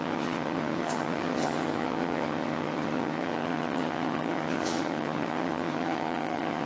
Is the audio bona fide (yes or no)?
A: no